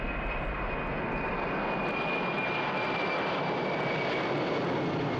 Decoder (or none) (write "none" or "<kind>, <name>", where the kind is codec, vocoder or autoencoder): none